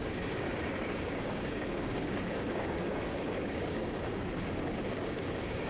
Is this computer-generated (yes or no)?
yes